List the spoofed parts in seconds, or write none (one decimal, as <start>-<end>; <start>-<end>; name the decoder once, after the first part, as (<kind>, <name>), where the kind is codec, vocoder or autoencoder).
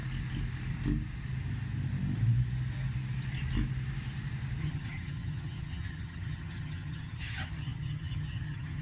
4.6-8.8 (vocoder, HiFi-GAN)